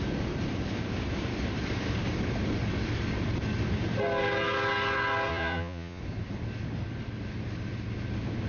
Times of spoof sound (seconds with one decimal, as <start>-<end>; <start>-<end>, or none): 5.3-6.0